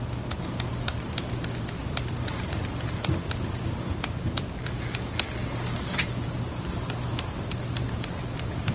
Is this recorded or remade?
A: recorded